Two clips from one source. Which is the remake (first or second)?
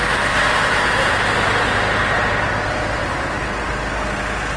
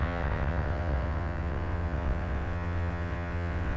second